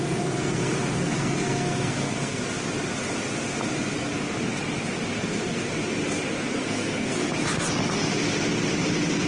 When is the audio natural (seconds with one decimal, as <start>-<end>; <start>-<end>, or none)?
2.4-5.1; 5.6-6.6; 7.3-9.3